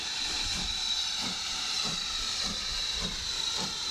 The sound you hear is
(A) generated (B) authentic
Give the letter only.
A